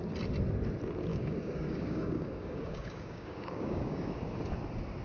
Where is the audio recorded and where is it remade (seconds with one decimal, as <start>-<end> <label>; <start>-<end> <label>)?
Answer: 0.0-1.1 recorded; 1.1-4.1 remade; 4.1-5.0 recorded